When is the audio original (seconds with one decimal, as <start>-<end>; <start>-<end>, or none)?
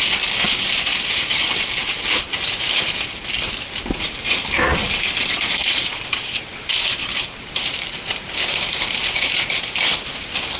0.0-6.9; 9.9-10.6